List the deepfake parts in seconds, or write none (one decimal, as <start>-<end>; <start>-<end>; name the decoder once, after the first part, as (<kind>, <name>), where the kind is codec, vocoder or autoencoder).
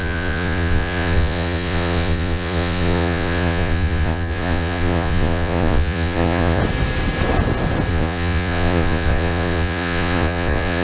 0.0-6.6 (vocoder, Vocos); 7.9-10.8